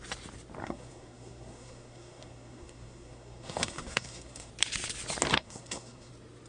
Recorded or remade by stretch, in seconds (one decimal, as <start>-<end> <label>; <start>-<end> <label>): 0.0-0.6 recorded; 0.6-4.5 remade; 4.5-5.3 recorded; 5.3-6.1 remade; 6.1-6.5 recorded